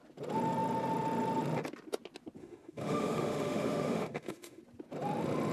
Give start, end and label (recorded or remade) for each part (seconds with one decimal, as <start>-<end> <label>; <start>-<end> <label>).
0.0-2.4 recorded; 2.4-4.6 remade; 4.6-5.5 recorded